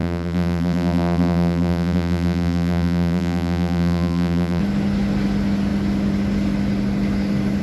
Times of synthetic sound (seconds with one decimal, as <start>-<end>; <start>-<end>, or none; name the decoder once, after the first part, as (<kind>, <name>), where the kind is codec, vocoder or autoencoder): 0.0-4.6 (vocoder, BigVGAN v2)